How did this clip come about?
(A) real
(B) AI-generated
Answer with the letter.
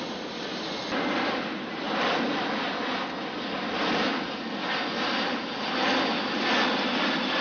A